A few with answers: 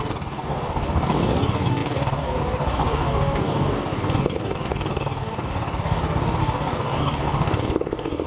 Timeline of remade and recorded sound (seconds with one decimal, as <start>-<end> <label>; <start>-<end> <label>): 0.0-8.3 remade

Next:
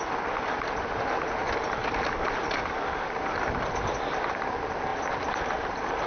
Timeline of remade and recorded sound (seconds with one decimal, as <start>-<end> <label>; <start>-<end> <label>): 0.0-6.1 recorded

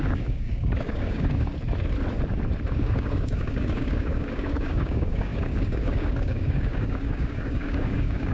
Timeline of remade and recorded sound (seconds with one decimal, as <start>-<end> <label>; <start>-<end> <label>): 0.0-1.5 remade; 1.5-2.7 recorded; 2.7-8.3 remade